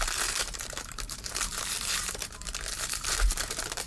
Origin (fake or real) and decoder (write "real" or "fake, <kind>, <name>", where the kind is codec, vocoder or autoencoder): fake, vocoder, BigVGAN v2